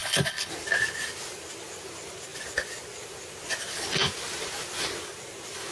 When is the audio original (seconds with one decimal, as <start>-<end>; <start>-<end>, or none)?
0.5-5.7